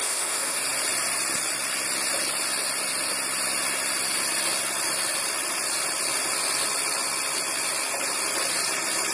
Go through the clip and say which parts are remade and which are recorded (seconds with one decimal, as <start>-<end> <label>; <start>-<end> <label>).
0.0-0.6 remade; 0.6-9.1 recorded